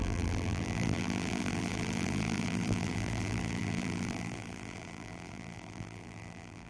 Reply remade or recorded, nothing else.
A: remade